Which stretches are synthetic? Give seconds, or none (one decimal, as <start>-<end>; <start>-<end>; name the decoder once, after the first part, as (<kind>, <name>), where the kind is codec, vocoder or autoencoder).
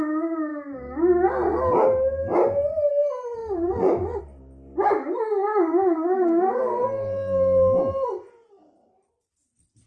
3.4-4.2 (vocoder, Vocos); 5.5-6.6